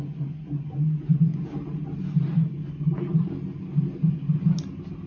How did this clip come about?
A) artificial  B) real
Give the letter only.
B